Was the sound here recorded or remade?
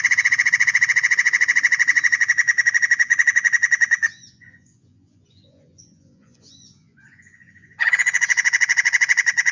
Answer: remade